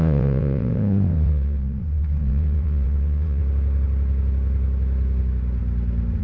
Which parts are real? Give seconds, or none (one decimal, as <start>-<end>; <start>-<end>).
3.4-6.2